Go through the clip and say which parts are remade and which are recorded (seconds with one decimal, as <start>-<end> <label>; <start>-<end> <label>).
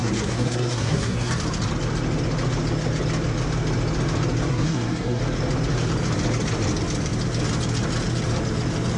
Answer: 0.0-1.3 remade; 1.3-4.5 recorded; 4.5-5.2 remade; 5.2-9.0 recorded